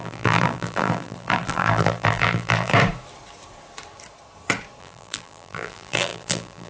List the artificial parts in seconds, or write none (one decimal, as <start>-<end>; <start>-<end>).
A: 0.0-2.7; 4.8-6.7